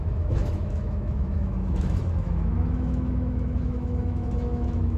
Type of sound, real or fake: fake